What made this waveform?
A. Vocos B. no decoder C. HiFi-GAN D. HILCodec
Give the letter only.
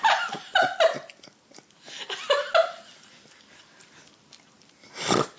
B